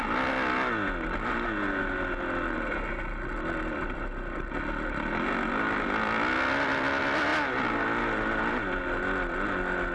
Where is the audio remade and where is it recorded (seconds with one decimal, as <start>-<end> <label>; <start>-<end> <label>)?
0.0-9.9 recorded